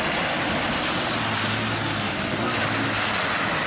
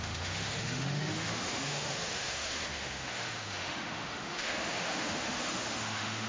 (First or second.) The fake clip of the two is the second